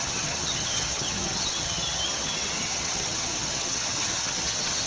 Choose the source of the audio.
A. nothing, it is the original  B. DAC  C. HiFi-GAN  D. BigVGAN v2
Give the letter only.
C